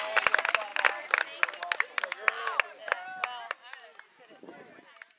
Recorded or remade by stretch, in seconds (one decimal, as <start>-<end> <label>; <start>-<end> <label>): 0.0-5.2 recorded